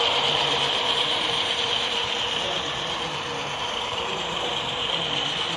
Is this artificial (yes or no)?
yes